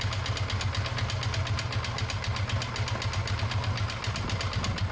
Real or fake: real